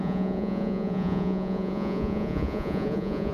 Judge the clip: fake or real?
fake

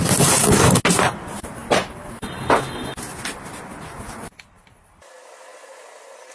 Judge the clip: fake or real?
real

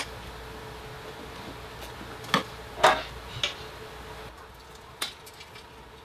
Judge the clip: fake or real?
real